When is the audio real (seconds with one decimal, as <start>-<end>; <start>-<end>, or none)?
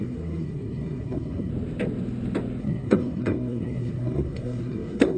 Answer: 1.5-2.6